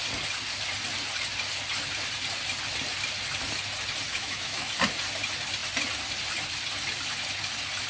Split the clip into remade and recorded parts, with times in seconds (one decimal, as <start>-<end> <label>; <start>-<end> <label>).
0.0-4.1 recorded; 4.1-4.7 remade; 4.7-7.9 recorded